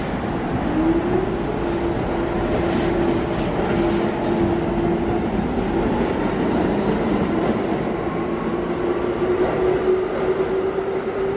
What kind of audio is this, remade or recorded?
recorded